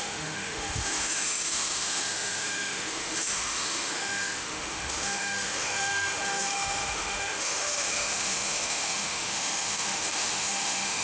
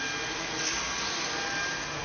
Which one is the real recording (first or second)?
second